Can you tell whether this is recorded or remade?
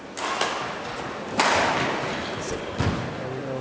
recorded